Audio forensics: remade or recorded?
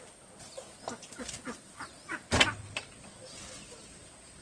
recorded